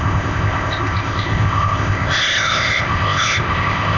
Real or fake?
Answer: fake